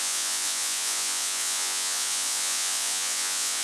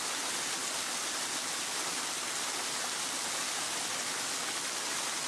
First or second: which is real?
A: second